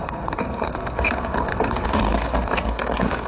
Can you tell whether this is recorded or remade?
remade